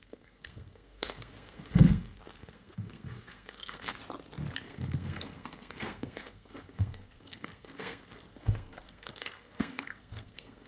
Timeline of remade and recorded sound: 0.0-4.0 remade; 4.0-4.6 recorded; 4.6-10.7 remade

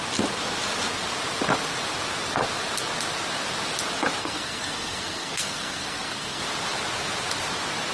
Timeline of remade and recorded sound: 0.0-4.2 recorded; 4.2-6.4 remade; 6.4-7.9 recorded

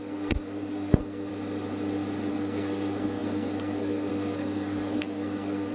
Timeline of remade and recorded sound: 0.0-1.3 remade; 1.3-2.3 recorded; 2.3-5.7 remade

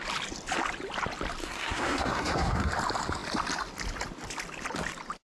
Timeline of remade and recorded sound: 0.0-1.4 recorded; 1.4-2.7 remade; 2.7-5.3 recorded

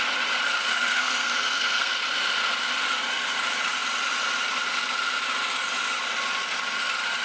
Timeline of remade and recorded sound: 0.0-0.7 recorded; 0.7-1.9 remade; 1.9-7.2 recorded